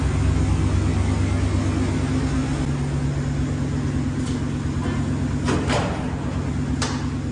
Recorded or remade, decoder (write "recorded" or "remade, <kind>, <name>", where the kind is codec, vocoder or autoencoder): recorded